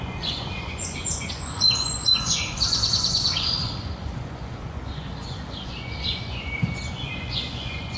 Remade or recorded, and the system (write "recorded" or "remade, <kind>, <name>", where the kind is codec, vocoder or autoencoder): remade, vocoder, Vocos